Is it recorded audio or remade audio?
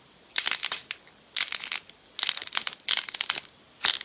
recorded